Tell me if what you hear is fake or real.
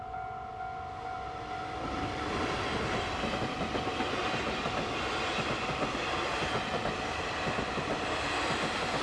real